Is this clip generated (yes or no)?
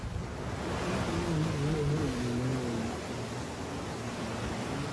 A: no